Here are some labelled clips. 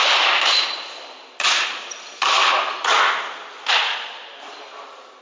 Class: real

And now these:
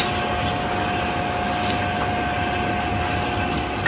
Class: real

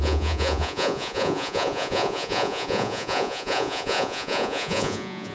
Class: fake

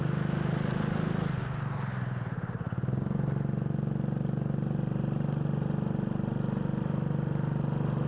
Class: real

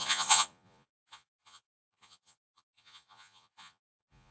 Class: fake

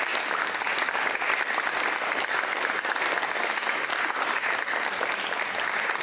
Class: real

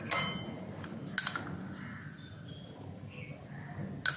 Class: real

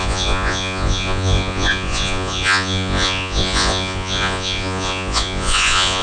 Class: fake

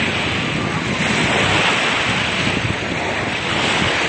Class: real